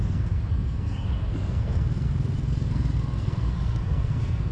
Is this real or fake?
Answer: fake